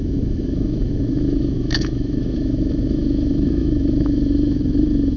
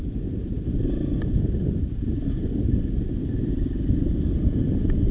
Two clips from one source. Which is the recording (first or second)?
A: second